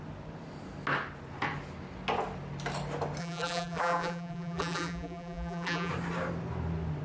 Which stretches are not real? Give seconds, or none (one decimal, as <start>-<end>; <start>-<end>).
3.2-5.9